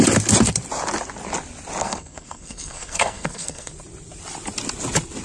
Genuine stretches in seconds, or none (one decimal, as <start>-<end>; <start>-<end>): 0.0-1.8; 3.7-5.2